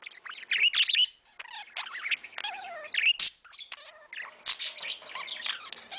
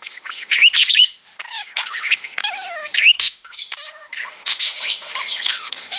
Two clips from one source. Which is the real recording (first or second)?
first